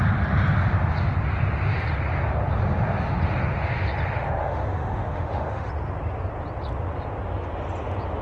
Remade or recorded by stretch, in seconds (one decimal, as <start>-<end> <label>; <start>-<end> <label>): 0.0-4.4 recorded; 4.4-5.7 remade; 5.7-8.2 recorded